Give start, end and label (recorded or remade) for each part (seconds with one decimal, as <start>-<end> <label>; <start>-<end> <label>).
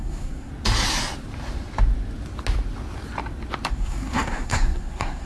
0.0-0.5 remade; 0.5-3.7 recorded; 3.7-5.3 remade